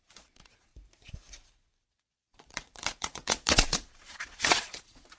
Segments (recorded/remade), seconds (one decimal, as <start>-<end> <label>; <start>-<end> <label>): 0.0-0.7 remade; 0.7-1.9 recorded; 1.9-5.2 remade